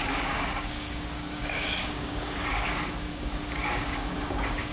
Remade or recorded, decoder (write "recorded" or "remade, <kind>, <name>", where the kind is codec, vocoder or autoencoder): remade, codec, DAC